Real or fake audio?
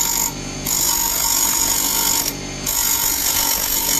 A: fake